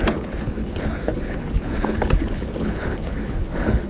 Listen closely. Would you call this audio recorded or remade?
remade